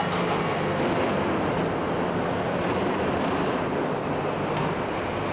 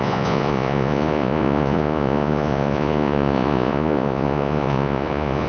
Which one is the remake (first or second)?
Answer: second